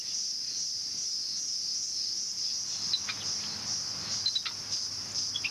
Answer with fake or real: real